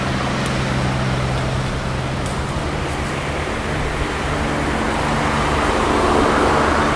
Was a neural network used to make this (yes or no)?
no